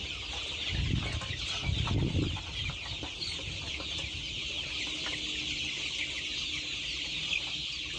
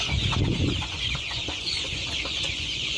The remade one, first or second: second